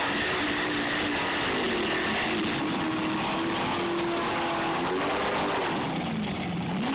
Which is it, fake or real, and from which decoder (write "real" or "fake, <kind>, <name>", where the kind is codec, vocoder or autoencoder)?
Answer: real